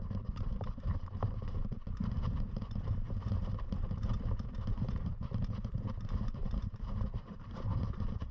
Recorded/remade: remade